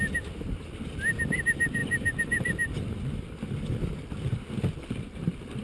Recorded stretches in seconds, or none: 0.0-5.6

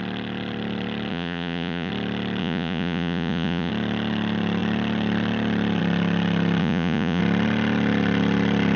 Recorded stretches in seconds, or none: 0.0-1.1; 1.9-2.4; 3.7-6.6; 7.2-8.8